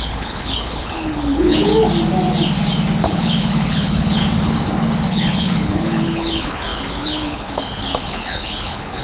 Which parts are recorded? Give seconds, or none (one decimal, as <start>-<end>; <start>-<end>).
1.7-3.0; 4.2-5.1